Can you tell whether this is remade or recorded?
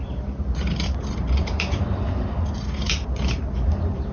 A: remade